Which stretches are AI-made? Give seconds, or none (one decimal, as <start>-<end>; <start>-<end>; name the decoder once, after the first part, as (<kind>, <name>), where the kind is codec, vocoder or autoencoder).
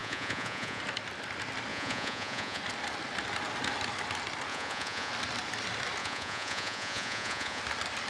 0.0-0.8 (vocoder, Vocos); 1.7-2.6; 4.5-5.1; 6.0-7.6